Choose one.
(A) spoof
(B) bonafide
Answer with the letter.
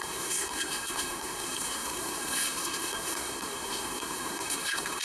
A